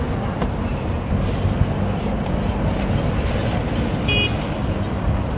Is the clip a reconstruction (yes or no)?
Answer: no